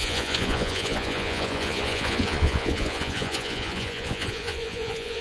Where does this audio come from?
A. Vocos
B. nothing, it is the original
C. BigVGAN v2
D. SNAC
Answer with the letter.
A